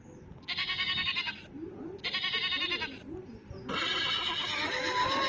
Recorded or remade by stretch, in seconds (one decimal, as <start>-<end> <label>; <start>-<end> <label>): 0.0-0.6 recorded; 0.6-1.3 remade; 1.3-5.3 recorded